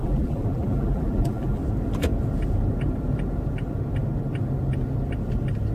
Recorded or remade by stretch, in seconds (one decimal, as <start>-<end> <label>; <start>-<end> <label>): 0.0-1.6 remade; 1.6-5.7 recorded